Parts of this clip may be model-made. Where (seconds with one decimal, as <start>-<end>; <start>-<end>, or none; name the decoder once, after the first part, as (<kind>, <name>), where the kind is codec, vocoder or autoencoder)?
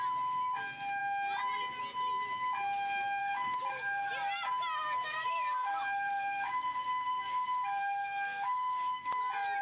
3.2-4.1 (codec, DAC); 4.8-9.2